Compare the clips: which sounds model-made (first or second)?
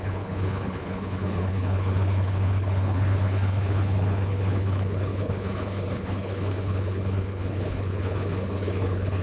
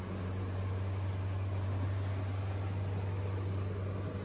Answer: first